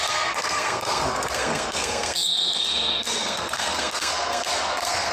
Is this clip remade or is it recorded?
remade